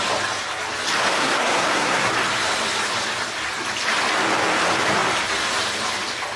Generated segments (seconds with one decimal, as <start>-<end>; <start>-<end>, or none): 1.2-2.1